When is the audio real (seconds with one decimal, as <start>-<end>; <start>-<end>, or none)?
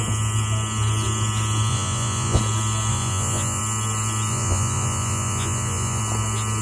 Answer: 0.0-1.7; 2.4-2.9; 3.6-4.3; 6.0-6.6